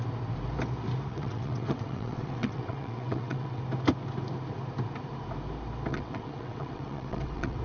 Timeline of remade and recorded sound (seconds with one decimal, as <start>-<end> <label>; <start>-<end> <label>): 0.0-1.1 recorded; 1.1-3.6 remade; 3.6-5.9 recorded; 5.9-7.6 remade